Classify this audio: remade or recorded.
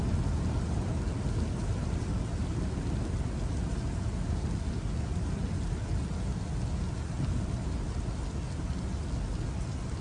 recorded